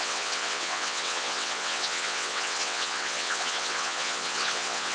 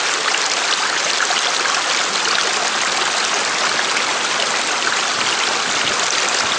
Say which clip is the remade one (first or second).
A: first